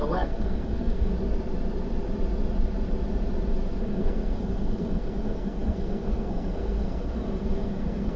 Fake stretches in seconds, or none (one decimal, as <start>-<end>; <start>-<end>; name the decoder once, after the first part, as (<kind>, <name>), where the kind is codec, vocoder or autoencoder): 0.0-1.1 (codec, SNAC); 3.8-8.2

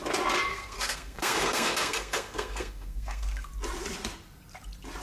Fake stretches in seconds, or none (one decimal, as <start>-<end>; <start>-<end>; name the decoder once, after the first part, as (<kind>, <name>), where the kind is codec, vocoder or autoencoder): 0.5-3.5 (codec, SNAC)

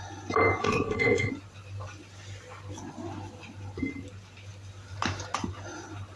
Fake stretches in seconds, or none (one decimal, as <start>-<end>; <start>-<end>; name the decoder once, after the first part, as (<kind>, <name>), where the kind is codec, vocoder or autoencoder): 0.6-1.3 (codec, SNAC)

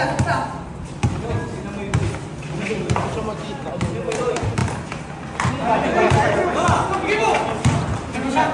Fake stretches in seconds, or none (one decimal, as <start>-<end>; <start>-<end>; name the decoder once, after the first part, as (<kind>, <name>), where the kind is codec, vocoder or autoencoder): none

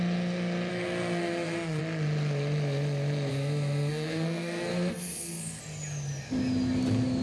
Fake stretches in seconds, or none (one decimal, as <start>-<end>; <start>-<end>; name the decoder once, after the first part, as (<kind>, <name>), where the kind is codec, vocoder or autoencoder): 0.7-1.8 (codec, SNAC); 3.3-5.6